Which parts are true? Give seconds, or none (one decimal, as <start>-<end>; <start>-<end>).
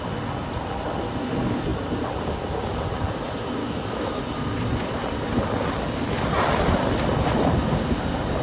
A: 0.0-3.6; 4.2-8.4